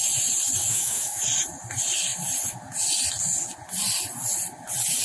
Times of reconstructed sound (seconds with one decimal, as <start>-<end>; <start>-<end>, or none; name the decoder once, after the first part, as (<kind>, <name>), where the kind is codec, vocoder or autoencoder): 0.6-1.2 (autoencoder, DAC-VAE)